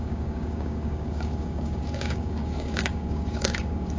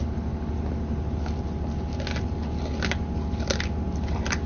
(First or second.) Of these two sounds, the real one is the second